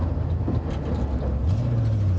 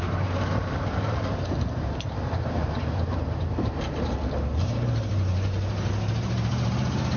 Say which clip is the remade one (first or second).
second